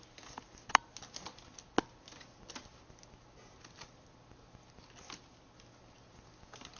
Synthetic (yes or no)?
no